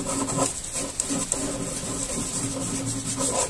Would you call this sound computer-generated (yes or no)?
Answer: no